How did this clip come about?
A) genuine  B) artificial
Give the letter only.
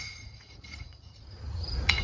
B